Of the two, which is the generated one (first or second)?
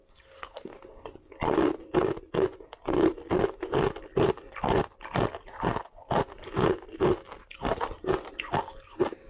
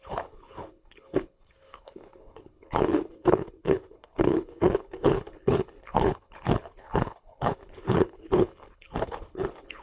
second